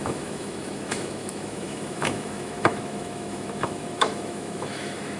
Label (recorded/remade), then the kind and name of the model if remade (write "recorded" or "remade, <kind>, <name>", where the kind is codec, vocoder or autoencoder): remade, autoencoder, DAC-VAE